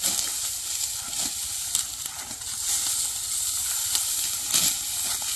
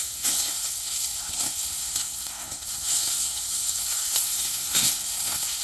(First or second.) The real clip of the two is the first